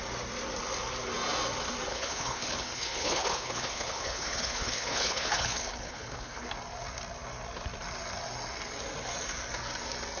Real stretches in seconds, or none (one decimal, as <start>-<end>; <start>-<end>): 0.0-1.9; 6.5-10.2